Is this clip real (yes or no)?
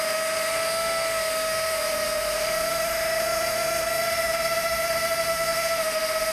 no